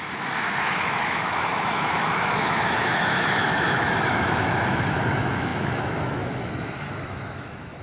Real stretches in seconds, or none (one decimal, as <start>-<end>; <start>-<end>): none